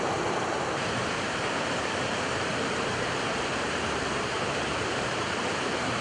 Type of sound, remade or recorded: remade